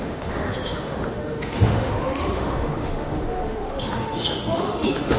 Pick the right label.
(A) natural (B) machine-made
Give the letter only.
B